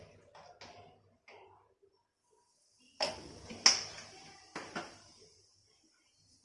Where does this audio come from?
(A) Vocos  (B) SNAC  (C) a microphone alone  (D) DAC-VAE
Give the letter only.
C